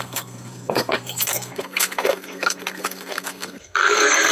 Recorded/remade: remade